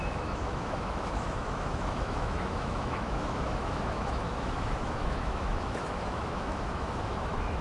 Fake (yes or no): yes